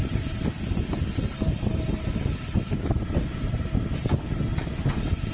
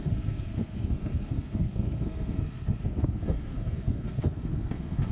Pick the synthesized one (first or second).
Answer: second